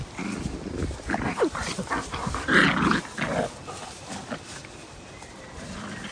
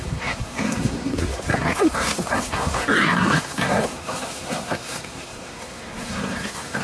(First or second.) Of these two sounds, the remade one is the second